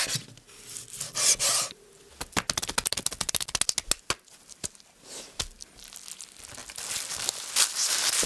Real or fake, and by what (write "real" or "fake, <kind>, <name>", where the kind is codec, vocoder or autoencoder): real